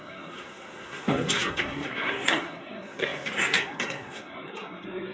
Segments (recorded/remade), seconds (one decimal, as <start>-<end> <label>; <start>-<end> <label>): 0.0-5.1 remade